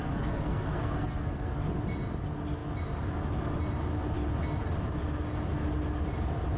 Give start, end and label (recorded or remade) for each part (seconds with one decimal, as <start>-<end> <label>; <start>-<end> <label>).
0.0-1.5 remade; 1.5-6.6 recorded